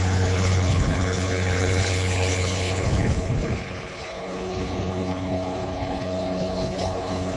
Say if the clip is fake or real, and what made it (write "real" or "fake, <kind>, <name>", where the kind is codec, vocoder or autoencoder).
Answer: fake, codec, HILCodec